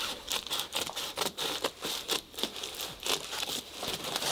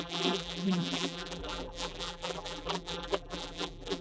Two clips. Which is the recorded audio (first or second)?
first